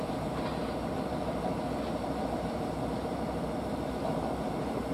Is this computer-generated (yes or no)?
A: yes